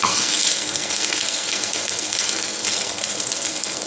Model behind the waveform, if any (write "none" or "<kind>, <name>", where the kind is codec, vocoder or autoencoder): codec, SNAC